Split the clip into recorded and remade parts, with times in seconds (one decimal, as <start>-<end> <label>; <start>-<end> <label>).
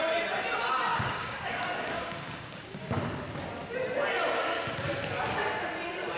0.0-0.9 recorded; 0.9-3.0 remade; 3.0-6.2 recorded